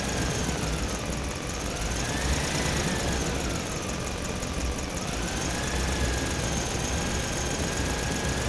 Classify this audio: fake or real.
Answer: real